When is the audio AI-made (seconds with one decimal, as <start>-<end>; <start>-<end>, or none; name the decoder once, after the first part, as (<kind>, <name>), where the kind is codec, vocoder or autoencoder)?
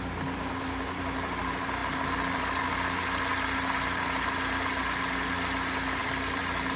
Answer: none